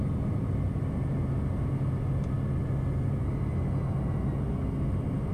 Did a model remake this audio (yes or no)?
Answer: no